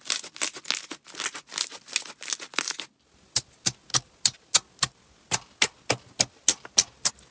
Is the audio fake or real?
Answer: real